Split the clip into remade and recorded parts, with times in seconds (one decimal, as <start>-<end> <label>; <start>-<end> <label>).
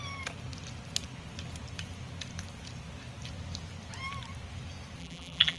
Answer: 0.0-5.0 recorded; 5.0-5.6 remade